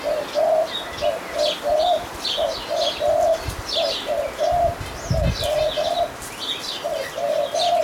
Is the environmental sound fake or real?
real